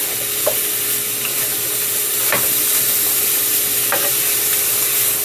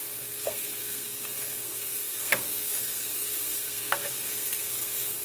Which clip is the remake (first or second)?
second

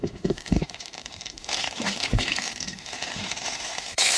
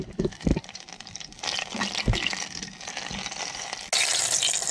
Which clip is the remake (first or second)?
first